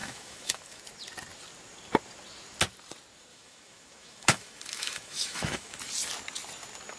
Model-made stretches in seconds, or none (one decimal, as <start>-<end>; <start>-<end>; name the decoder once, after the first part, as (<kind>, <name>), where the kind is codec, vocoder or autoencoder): 0.0-0.8 (autoencoder, DAC-VAE); 3.3-5.8